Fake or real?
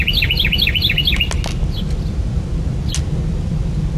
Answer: real